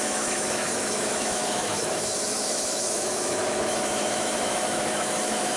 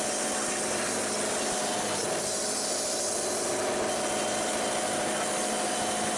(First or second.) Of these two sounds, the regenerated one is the first